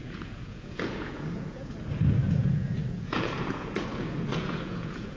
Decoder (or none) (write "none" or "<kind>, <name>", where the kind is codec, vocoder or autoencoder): vocoder, Vocos